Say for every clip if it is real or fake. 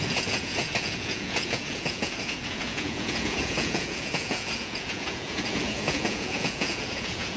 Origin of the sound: fake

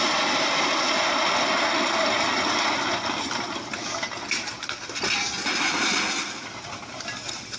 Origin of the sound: real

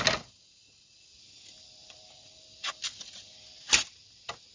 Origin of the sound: real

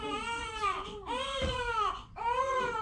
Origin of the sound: fake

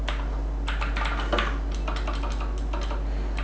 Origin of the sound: real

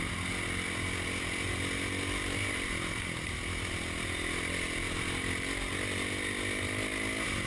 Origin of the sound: real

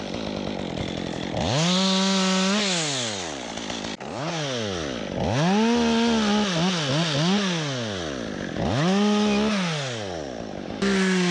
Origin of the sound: real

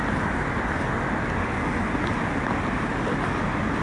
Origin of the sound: real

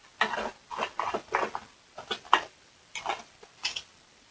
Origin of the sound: real